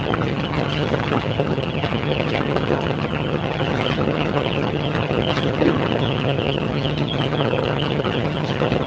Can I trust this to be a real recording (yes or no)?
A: no